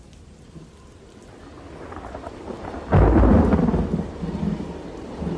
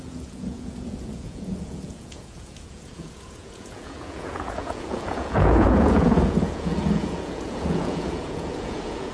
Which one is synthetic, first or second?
second